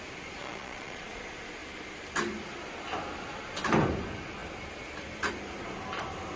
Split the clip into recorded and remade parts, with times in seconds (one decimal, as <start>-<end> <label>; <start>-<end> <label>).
0.0-0.4 recorded; 0.4-1.2 remade; 1.2-6.4 recorded